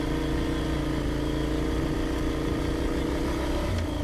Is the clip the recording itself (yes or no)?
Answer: yes